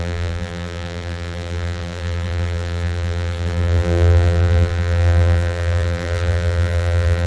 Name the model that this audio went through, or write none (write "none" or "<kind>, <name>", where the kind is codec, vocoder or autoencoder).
vocoder, BigVGAN v2